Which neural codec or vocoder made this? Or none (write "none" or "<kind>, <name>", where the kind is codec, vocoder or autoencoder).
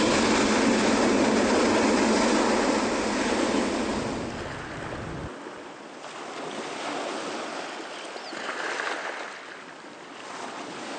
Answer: none